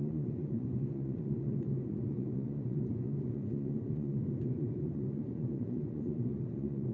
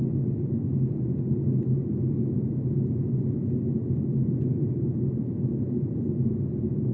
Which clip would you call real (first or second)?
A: second